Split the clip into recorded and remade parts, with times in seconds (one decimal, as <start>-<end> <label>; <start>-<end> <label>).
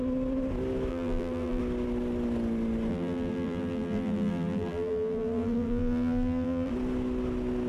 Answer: 0.0-0.9 recorded; 0.9-1.6 remade; 1.6-2.9 recorded; 2.9-6.7 remade; 6.7-7.7 recorded